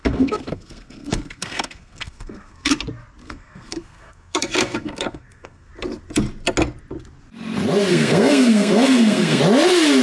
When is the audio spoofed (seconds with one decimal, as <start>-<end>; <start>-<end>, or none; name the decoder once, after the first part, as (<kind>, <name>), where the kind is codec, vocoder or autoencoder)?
0.0-2.8 (codec, SNAC); 3.2-5.7; 7.9-9.4